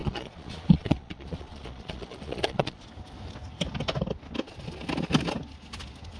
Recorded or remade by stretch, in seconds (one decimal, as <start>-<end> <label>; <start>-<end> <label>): 0.0-2.9 remade; 2.9-6.2 recorded